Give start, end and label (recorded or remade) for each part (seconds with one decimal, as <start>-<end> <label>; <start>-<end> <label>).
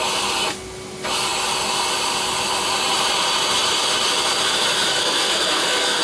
0.0-4.9 recorded; 4.9-6.0 remade